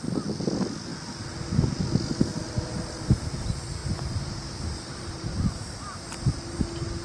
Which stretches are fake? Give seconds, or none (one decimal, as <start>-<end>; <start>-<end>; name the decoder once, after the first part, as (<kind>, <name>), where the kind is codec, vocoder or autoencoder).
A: 3.8-5.8 (vocoder, BigVGAN v2)